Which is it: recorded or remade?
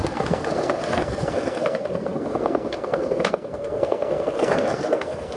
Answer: remade